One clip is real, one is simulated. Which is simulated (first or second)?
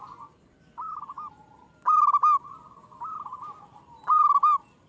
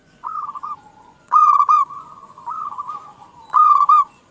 second